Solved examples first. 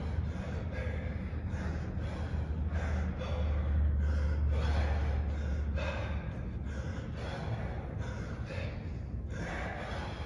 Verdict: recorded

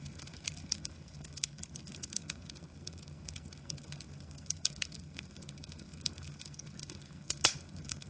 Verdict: remade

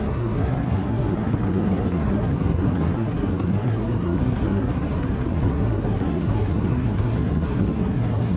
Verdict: remade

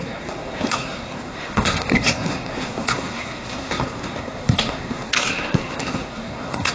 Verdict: remade